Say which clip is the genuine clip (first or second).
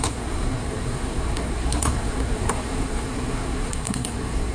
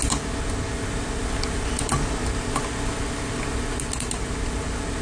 second